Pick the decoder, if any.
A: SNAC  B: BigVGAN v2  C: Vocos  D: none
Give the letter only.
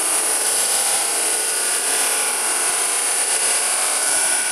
B